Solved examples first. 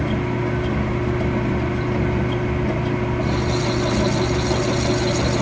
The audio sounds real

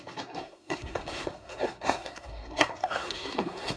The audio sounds fake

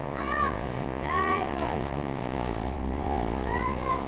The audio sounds fake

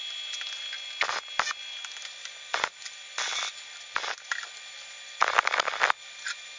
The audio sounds real